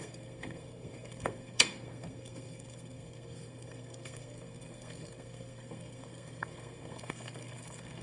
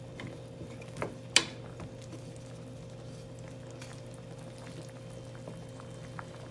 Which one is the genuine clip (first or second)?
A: second